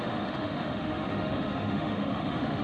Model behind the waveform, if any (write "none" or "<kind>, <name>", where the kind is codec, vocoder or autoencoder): autoencoder, DAC-VAE